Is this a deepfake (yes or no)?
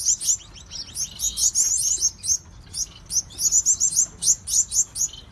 no